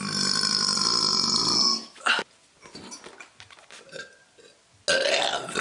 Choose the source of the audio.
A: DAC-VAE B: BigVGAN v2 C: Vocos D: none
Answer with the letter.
D